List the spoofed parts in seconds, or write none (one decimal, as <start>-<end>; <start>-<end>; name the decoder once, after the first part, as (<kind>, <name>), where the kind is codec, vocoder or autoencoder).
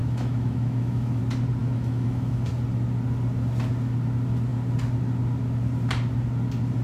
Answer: 0.0-1.2 (autoencoder, DAC-VAE); 1.6-2.5